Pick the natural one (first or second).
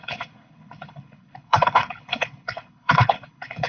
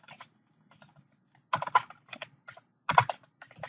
second